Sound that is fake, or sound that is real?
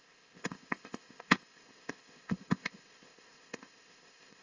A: fake